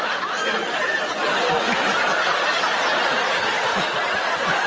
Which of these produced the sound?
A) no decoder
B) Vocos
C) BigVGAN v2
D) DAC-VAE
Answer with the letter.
A